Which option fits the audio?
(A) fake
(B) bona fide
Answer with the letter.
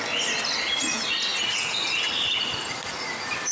B